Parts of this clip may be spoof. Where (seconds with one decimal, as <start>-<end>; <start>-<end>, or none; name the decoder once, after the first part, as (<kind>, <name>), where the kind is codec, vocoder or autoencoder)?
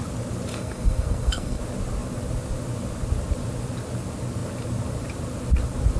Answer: 0.5-1.6 (codec, SNAC)